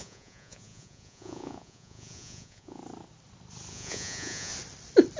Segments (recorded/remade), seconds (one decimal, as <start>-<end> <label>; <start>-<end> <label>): 0.0-2.8 remade; 2.8-3.7 recorded; 3.7-4.5 remade; 4.5-5.2 recorded